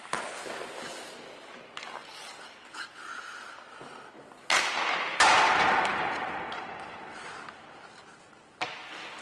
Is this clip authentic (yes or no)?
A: yes